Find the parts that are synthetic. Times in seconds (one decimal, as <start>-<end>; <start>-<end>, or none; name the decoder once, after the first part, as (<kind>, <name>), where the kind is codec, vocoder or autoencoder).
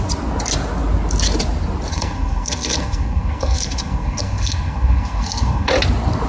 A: 1.9-5.7 (codec, SNAC)